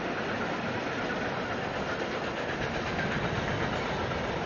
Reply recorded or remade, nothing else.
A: remade